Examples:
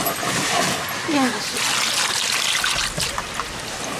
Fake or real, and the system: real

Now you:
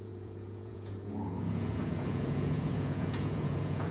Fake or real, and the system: fake, vocoder, Vocos